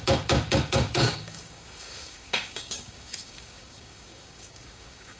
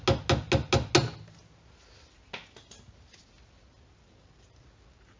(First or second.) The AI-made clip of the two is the first